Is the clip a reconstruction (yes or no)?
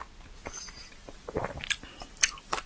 no